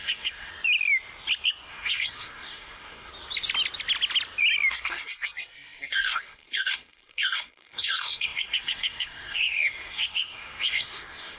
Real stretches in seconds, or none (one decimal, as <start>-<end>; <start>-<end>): 0.5-1.7; 3.1-4.7